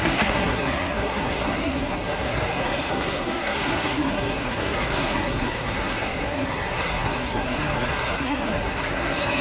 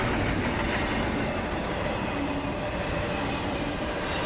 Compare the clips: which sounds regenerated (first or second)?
first